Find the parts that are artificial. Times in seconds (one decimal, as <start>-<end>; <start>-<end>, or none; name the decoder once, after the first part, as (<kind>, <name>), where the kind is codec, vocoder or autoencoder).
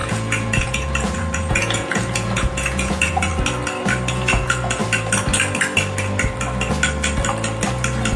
0.0-3.3 (vocoder, Vocos); 4.1-4.8